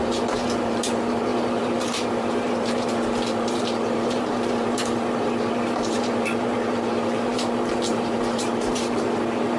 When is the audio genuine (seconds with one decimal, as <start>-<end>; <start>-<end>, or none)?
none